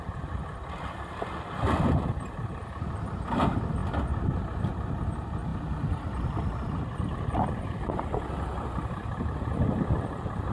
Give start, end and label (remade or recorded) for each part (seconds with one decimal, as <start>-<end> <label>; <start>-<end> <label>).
0.0-3.8 remade; 3.8-4.6 recorded; 4.6-5.5 remade; 5.5-7.7 recorded; 7.7-10.5 remade